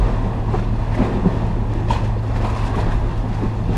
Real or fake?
real